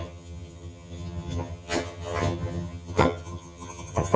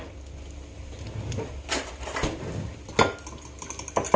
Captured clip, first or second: second